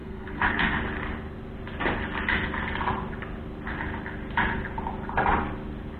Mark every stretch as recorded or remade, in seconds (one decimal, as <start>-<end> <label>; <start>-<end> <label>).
0.0-0.8 remade; 0.8-6.0 recorded